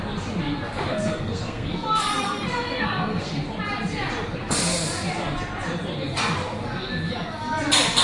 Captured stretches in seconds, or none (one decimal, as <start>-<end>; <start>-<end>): 0.0-0.9; 3.4-8.0